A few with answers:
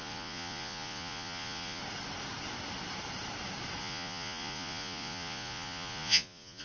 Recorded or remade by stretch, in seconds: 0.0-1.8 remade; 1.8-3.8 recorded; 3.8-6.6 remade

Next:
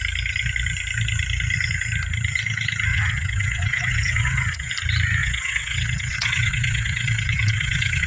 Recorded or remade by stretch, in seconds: 0.0-2.9 recorded; 2.9-4.7 remade; 4.7-5.2 recorded; 5.2-8.1 remade

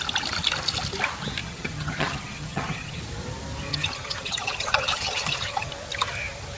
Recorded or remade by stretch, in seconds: 0.0-1.4 recorded; 1.4-3.0 remade; 3.0-3.7 recorded; 3.7-5.7 remade; 5.7-6.6 recorded

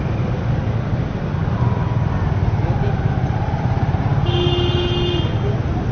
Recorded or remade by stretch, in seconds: 0.0-5.9 recorded

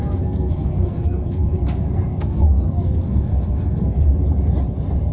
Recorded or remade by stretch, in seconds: 0.0-4.1 remade; 4.1-5.1 recorded

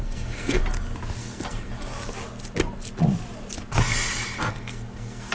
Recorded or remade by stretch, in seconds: 0.0-0.6 remade; 0.6-1.2 recorded; 1.2-1.7 remade; 1.7-4.5 recorded; 4.5-5.3 remade

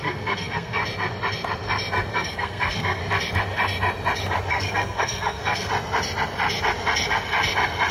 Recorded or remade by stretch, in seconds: 0.0-0.8 remade; 0.8-2.1 recorded; 2.1-3.0 remade; 3.0-4.5 recorded; 4.5-5.7 remade; 5.7-7.9 recorded

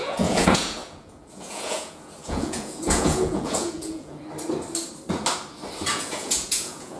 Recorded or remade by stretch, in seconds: 0.0-4.2 remade; 4.2-5.9 recorded; 5.9-7.0 remade